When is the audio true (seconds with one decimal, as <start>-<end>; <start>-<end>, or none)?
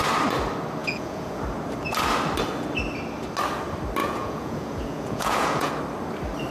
0.0-0.8; 1.4-4.0; 5.7-6.5